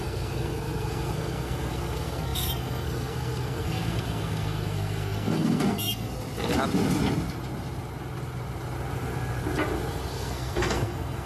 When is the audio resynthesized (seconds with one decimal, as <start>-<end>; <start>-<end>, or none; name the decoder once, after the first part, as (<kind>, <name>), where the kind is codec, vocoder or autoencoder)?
0.0-6.1 (codec, SNAC); 10.1-11.3